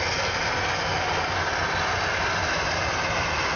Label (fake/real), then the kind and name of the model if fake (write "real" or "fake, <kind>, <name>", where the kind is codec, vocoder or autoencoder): real